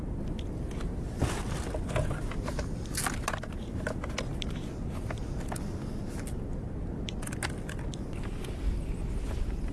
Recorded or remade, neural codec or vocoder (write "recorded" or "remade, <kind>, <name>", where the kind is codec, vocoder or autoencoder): recorded